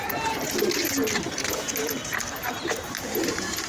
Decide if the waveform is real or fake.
real